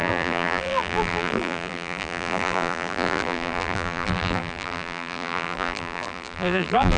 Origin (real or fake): fake